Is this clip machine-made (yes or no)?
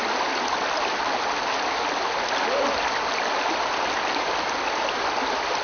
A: no